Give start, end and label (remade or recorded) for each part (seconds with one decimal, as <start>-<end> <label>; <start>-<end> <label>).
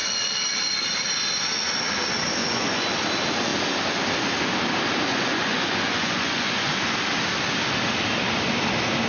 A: 0.0-2.4 recorded; 2.4-2.9 remade; 2.9-5.1 recorded; 5.1-6.7 remade; 6.7-9.1 recorded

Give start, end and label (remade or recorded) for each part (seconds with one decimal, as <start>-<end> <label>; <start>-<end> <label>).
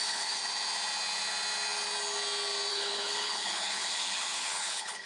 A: 0.0-0.4 remade; 0.4-2.7 recorded; 2.7-5.1 remade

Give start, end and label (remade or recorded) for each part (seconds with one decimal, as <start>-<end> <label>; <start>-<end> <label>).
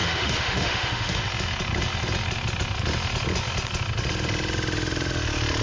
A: 0.0-1.2 remade; 1.2-5.6 recorded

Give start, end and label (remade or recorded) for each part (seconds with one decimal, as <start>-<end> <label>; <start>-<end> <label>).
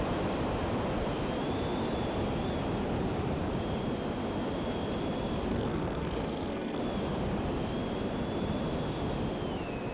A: 0.0-5.5 recorded; 5.5-6.8 remade; 6.8-9.9 recorded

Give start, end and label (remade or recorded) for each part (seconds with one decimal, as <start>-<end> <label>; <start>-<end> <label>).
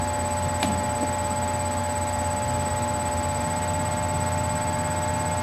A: 0.0-5.4 recorded